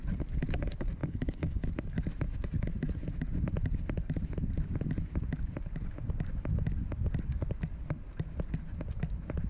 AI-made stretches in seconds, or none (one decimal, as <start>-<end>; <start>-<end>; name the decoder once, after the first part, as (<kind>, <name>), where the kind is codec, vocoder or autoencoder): 1.0-1.7 (codec, DAC)